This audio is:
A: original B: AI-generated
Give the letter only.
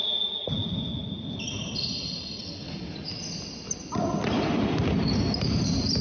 A